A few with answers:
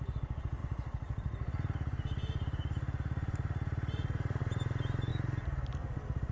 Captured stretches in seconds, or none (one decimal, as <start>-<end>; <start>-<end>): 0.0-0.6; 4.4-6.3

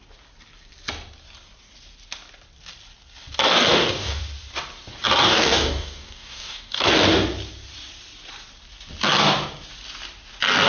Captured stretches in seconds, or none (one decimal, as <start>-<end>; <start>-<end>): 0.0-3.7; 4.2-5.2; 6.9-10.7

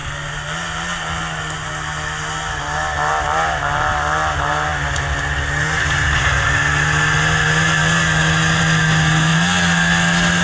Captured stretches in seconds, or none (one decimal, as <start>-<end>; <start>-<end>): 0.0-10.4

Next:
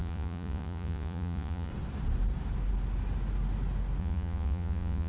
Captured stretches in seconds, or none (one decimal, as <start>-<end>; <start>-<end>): 1.7-4.0

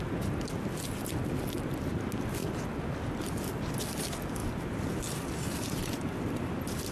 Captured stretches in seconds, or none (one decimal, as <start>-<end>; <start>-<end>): 0.0-4.4

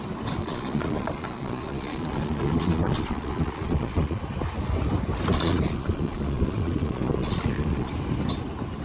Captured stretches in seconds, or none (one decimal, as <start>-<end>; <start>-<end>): 0.0-0.4; 4.2-5.3; 7.9-8.8